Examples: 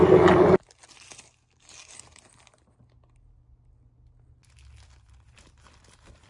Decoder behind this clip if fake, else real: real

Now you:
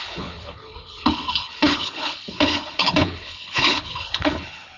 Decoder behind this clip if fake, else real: fake, codec, HILCodec